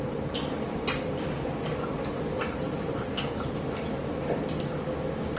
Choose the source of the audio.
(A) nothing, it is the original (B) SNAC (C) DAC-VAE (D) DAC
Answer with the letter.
A